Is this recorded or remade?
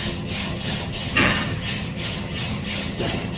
remade